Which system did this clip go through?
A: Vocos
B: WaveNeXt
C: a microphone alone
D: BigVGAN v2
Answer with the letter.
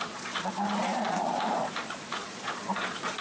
A